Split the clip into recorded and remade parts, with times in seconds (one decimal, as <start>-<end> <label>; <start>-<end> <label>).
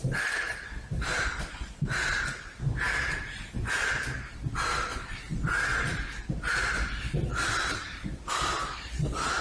0.0-5.7 recorded; 5.7-6.3 remade; 6.3-7.3 recorded; 7.3-8.8 remade; 8.8-9.4 recorded